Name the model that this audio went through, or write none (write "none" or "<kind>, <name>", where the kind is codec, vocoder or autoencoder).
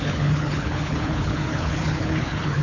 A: codec, HILCodec